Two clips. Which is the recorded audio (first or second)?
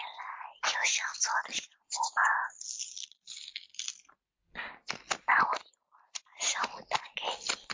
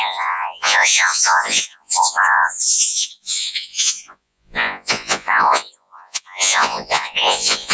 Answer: first